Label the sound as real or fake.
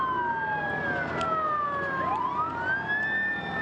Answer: real